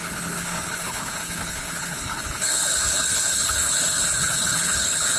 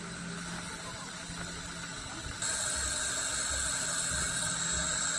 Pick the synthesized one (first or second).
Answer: first